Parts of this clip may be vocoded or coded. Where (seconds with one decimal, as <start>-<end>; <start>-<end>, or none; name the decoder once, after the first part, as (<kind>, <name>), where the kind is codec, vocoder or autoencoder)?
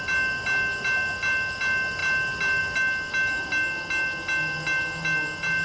none